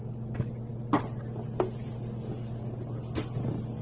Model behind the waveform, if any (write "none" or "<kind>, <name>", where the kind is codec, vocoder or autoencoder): none